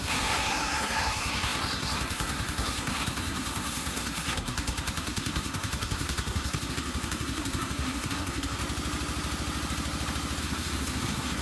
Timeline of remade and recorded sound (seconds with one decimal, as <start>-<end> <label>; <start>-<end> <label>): 0.0-8.6 remade; 8.6-10.4 recorded; 10.4-11.4 remade